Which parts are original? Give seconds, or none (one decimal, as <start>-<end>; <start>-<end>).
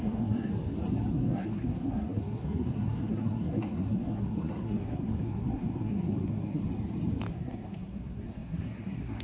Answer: 0.5-1.1; 6.6-7.3